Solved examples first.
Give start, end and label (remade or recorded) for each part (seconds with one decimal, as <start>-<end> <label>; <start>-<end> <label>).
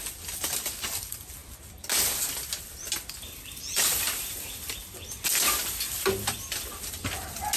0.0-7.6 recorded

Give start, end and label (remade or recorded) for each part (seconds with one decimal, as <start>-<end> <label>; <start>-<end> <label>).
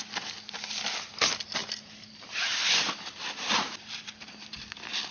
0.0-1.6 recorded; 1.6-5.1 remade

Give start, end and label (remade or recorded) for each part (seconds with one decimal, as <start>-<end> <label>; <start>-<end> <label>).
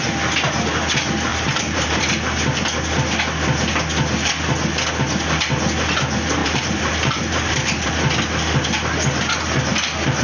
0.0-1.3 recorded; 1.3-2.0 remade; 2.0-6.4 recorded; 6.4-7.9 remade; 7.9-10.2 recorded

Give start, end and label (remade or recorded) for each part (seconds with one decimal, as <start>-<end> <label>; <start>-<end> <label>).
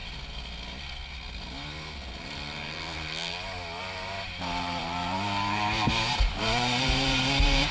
0.0-3.8 recorded; 3.8-7.7 remade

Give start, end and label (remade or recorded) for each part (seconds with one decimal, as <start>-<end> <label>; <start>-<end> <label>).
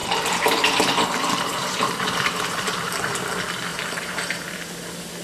0.0-3.1 remade; 3.1-3.7 recorded; 3.7-4.6 remade; 4.6-5.2 recorded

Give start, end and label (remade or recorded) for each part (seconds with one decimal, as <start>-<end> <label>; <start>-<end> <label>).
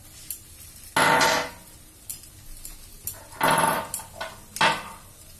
0.0-5.4 recorded